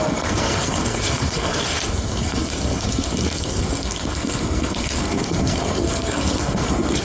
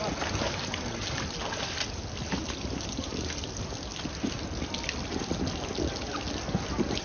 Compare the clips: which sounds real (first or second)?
second